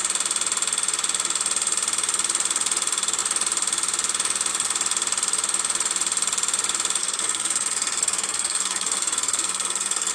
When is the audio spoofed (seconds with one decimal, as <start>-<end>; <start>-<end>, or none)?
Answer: 7.0-10.1

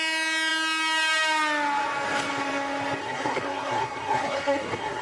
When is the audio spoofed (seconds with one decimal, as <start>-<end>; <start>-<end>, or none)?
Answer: 3.0-5.0

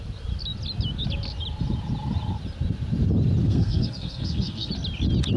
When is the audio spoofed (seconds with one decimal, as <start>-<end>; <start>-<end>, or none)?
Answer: 3.4-4.7